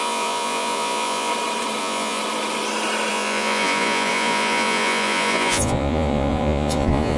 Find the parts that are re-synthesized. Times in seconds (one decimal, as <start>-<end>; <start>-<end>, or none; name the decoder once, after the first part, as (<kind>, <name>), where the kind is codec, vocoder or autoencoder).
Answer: 0.0-1.3 (vocoder, Vocos); 1.8-2.2; 3.1-7.2